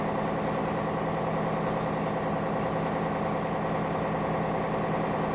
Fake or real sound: real